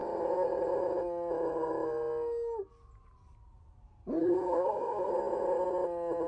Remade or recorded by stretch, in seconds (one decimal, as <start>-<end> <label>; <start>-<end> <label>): 0.0-4.2 recorded; 4.2-5.1 remade; 5.1-6.3 recorded